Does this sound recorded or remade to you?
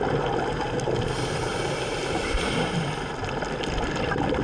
recorded